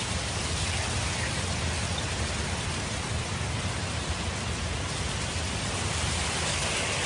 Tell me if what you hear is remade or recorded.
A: recorded